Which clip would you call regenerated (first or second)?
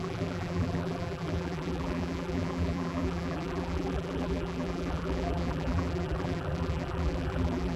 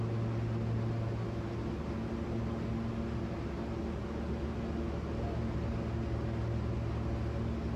first